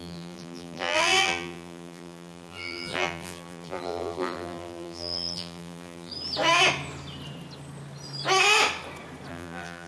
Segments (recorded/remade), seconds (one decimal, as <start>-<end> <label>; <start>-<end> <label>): 0.0-6.1 remade; 6.1-9.3 recorded; 9.3-9.9 remade

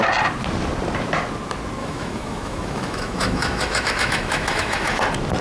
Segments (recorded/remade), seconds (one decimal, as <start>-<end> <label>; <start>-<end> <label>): 0.0-1.8 recorded; 1.8-5.0 remade; 5.0-5.4 recorded

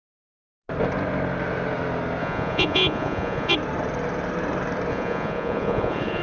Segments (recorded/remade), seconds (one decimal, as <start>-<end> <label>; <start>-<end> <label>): 0.0-2.2 recorded; 2.2-3.5 remade; 3.5-4.9 recorded; 4.9-6.2 remade

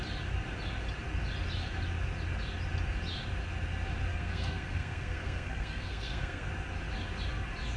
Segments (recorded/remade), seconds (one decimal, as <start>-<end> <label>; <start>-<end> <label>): 0.0-4.1 recorded; 4.1-6.5 remade; 6.5-7.8 recorded